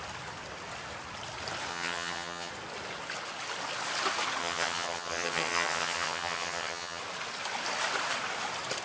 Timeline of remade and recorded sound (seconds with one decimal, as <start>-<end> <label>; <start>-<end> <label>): 0.0-1.7 recorded; 1.7-2.5 remade; 2.5-4.4 recorded; 4.4-7.0 remade; 7.0-8.8 recorded